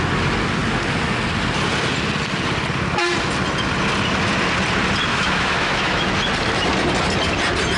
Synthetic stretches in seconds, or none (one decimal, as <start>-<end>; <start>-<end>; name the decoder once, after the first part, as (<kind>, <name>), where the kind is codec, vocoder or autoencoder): 5.1-6.1 (autoencoder, DAC-VAE)